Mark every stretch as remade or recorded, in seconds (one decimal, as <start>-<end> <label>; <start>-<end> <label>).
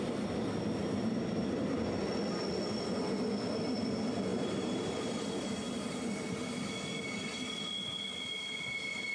0.0-0.8 recorded; 0.8-1.7 remade; 1.7-4.3 recorded; 4.3-6.0 remade; 6.0-9.1 recorded